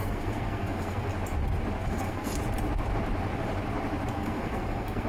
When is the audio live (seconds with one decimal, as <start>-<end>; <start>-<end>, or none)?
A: 1.1-1.9; 2.3-4.1